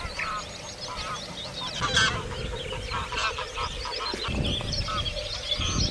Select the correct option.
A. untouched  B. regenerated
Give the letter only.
A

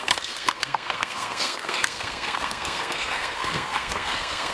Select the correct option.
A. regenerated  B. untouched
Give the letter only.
A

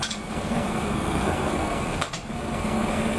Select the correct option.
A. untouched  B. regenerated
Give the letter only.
B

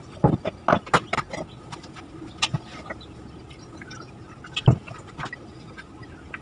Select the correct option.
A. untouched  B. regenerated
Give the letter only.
A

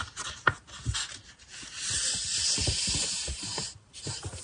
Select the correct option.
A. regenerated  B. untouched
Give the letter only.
B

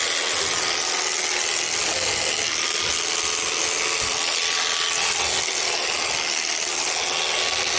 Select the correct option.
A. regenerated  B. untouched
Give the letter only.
B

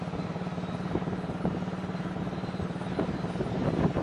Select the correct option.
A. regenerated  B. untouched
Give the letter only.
B